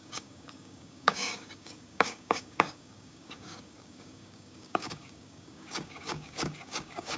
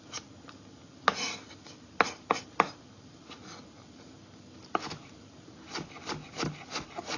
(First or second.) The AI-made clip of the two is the first